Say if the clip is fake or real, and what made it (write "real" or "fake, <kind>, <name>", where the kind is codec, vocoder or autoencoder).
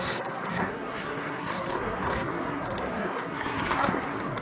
fake, codec, SNAC